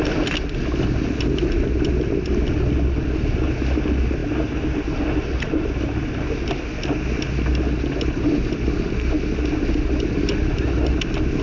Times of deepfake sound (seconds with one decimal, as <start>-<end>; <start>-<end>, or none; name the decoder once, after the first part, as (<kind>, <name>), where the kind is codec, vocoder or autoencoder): none